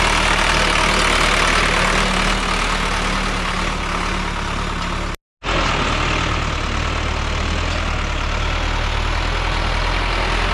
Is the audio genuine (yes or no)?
yes